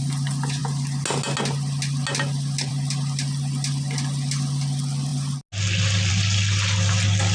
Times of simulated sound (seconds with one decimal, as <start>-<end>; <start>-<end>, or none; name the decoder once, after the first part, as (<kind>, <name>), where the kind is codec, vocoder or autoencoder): none